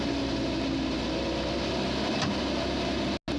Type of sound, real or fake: real